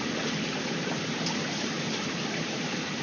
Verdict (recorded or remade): remade